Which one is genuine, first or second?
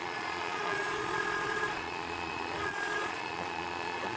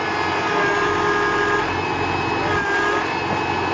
second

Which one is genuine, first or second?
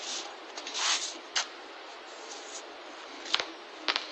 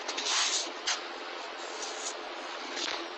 first